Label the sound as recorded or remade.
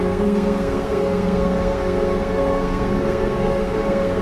remade